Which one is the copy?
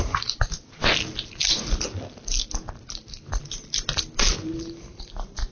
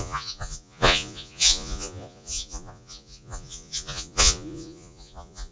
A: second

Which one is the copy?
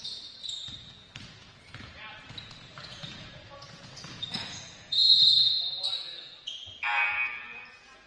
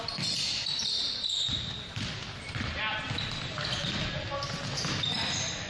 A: first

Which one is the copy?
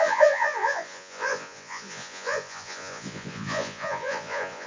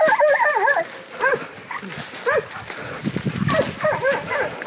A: first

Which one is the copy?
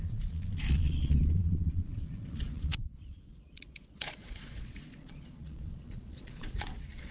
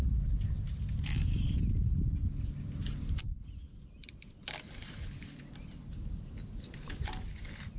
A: first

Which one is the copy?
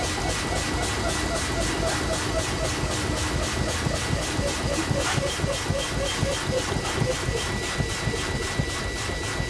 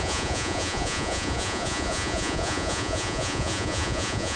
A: second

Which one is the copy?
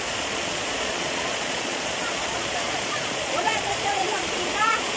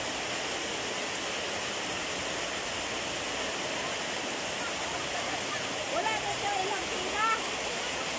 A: first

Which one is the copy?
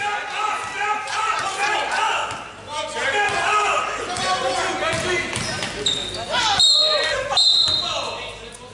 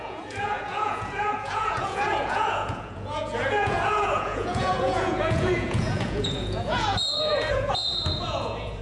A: second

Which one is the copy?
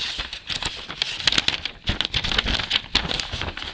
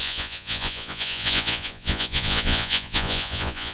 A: second